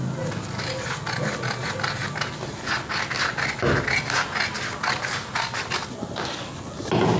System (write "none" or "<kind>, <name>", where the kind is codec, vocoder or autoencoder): none